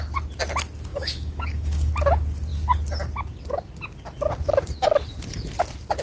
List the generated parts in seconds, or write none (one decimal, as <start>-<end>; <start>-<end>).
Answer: 0.9-1.9